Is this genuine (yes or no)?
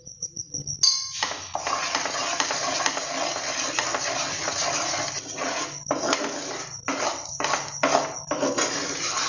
yes